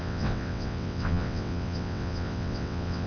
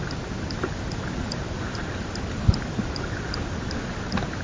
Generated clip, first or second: first